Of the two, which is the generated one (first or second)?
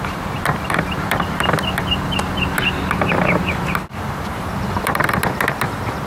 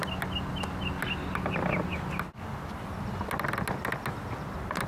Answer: first